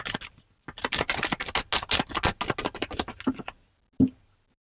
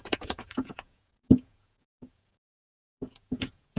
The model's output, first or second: second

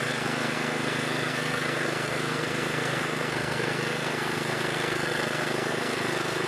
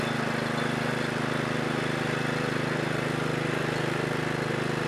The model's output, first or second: first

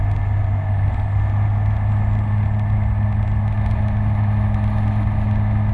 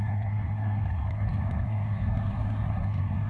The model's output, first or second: second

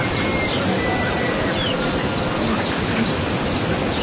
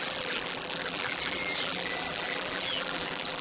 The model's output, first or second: second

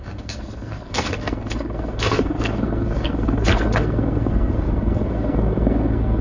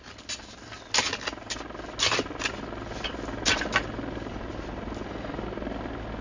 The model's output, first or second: first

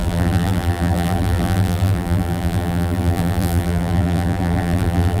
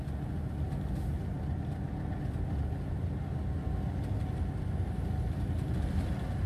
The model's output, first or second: first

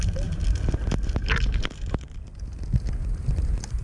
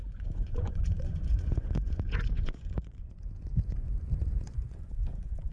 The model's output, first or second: second